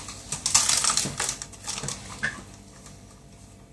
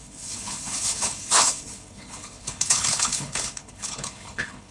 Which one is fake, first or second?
second